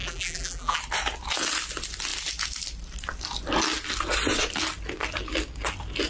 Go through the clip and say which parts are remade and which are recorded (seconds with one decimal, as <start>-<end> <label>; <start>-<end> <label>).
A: 0.0-0.8 remade; 0.8-6.1 recorded